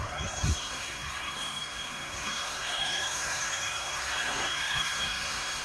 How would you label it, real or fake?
fake